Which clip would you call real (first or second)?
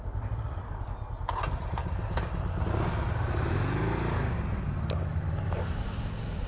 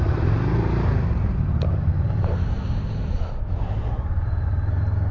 first